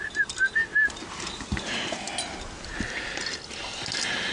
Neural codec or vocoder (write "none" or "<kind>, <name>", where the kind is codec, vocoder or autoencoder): none